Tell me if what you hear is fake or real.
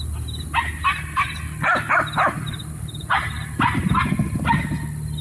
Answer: real